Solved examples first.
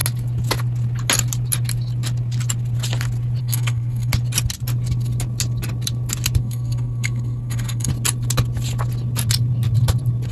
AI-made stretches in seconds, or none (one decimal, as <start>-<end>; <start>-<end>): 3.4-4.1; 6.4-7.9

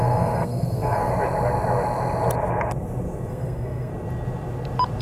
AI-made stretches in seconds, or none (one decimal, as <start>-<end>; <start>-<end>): 0.0-1.1; 3.3-3.9

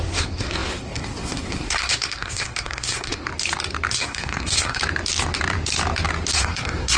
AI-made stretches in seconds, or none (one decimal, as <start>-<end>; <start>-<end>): 0.0-3.3; 3.9-4.8; 6.3-7.0

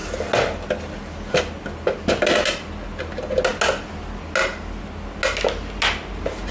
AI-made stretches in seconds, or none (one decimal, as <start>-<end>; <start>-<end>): none

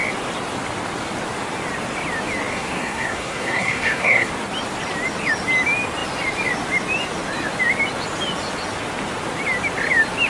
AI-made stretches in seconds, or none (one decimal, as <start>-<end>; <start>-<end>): 2.5-4.3

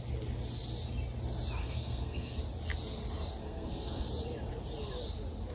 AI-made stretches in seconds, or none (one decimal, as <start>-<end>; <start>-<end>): 1.6-2.4; 3.4-4.1